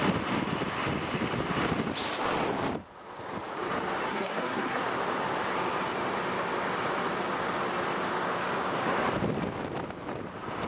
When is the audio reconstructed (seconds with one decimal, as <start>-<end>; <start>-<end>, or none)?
4.1-4.8